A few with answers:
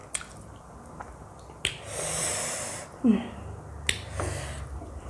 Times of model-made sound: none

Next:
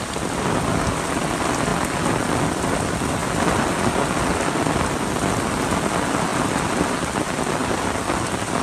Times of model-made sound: none

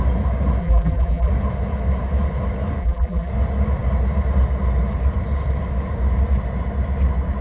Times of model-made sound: 0.6-1.3 (vocoder, BigVGAN v2); 2.8-3.3